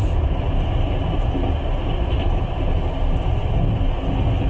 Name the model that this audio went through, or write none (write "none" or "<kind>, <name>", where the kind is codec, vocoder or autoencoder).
none